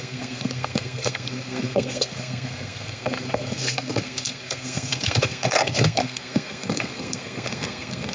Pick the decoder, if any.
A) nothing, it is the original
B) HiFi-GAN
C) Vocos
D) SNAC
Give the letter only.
D